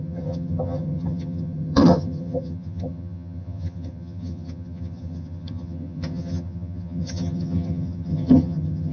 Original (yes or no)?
no